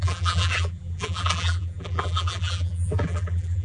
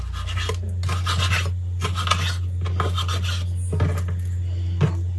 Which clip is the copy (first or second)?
first